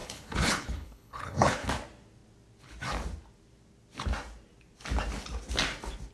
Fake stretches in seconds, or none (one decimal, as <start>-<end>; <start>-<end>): 0.0-1.7